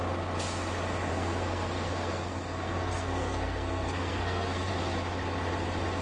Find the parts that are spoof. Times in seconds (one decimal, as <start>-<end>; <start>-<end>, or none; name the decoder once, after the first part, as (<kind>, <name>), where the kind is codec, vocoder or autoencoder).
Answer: 1.1-4.7 (codec, SNAC)